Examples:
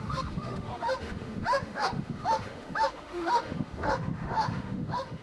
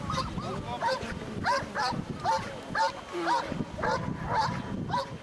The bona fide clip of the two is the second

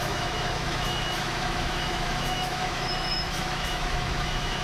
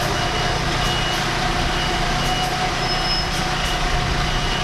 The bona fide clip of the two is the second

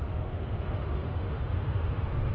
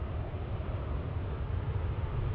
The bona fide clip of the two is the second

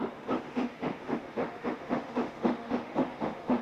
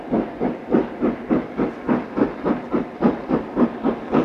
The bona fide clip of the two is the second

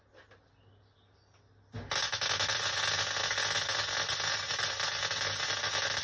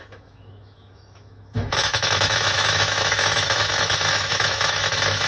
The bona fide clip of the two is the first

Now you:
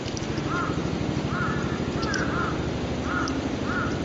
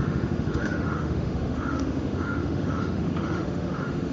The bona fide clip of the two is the first